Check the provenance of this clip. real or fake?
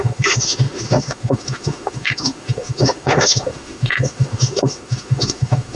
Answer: fake